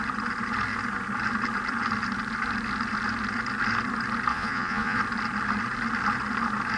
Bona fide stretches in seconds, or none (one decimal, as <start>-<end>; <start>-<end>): 0.0-4.3; 5.0-6.8